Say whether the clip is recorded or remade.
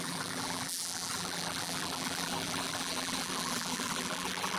remade